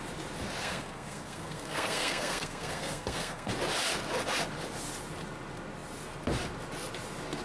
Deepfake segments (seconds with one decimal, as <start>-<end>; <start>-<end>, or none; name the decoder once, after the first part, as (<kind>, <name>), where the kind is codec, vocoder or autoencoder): 0.6-3.5 (codec, SNAC)